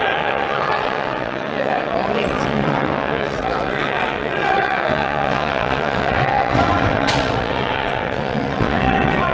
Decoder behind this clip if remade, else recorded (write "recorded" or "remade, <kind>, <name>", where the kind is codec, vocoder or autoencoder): remade, vocoder, WaveNeXt